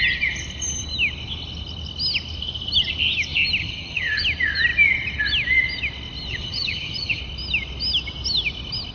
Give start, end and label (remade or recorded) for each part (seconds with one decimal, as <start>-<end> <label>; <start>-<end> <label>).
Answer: 0.0-3.6 recorded; 3.6-4.2 remade; 4.2-6.3 recorded; 6.3-7.2 remade; 7.2-8.9 recorded